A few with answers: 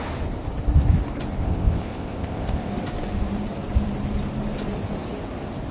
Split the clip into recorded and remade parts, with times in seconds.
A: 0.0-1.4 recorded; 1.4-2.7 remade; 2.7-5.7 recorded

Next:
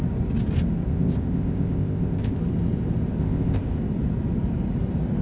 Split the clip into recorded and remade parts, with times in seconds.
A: 0.0-0.9 recorded; 0.9-2.4 remade; 2.4-3.2 recorded; 3.2-3.8 remade; 3.8-5.2 recorded

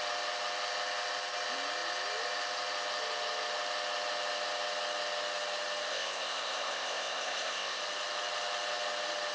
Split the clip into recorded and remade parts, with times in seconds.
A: 0.0-5.9 recorded; 5.9-7.8 remade; 7.8-9.3 recorded

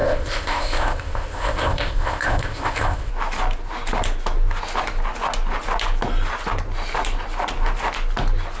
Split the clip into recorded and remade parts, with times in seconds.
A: 0.0-3.1 remade; 3.1-8.6 recorded

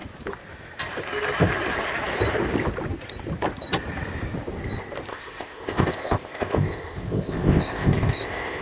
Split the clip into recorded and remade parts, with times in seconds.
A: 0.0-5.1 recorded; 5.1-8.6 remade

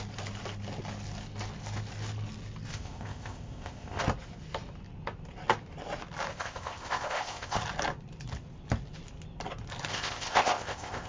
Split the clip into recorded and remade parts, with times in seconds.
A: 0.0-2.7 recorded; 2.7-4.0 remade; 4.0-6.3 recorded; 6.3-7.6 remade; 7.6-9.9 recorded; 9.9-11.1 remade

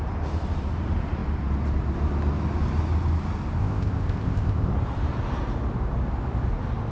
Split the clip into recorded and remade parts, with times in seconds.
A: 0.0-3.6 recorded; 3.6-4.7 remade; 4.7-6.9 recorded

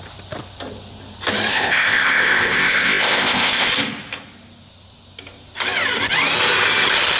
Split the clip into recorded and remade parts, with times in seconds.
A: 0.0-1.5 recorded; 1.5-3.7 remade; 3.7-7.2 recorded